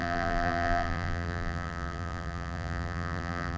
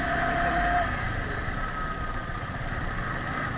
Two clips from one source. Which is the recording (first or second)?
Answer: second